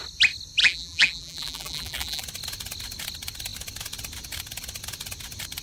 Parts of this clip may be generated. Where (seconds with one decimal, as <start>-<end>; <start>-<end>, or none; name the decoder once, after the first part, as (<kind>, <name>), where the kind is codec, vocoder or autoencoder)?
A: 0.6-2.2 (vocoder, BigVGAN v2)

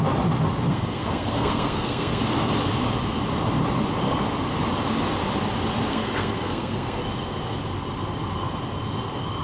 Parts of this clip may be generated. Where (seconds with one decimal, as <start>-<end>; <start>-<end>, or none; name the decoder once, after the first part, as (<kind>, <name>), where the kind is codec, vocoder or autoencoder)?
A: 0.7-2.2 (codec, SNAC); 5.9-7.0

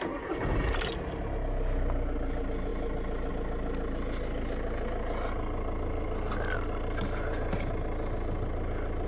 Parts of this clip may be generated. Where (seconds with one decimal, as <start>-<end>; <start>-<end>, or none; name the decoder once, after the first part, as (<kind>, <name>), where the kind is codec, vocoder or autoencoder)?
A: none

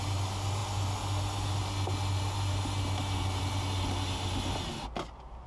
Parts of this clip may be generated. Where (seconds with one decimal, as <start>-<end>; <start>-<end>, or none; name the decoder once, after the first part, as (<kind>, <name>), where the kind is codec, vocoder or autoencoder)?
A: none

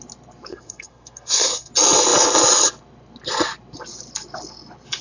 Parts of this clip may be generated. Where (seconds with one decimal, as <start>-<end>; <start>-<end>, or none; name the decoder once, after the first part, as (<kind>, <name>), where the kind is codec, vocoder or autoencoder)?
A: 0.5-1.7 (codec, SNAC)

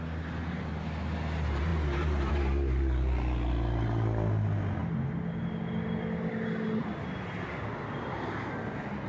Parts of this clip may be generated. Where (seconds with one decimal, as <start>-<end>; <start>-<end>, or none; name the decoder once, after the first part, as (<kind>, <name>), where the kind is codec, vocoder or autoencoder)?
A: none

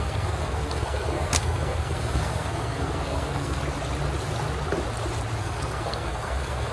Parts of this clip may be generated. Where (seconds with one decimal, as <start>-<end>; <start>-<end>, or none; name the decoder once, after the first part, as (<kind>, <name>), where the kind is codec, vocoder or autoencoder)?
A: 0.0-3.6 (codec, SNAC); 5.4-6.7